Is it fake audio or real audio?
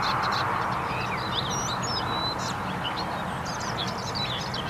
real